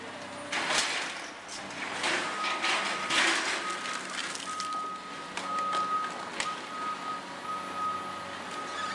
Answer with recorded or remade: recorded